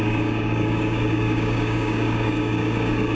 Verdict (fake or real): fake